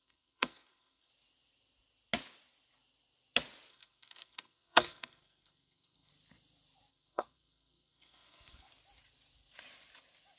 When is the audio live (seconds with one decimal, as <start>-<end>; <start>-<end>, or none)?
1.1-3.7; 6.1-6.9; 8.7-10.4